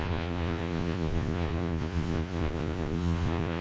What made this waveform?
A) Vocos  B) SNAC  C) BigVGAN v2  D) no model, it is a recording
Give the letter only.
A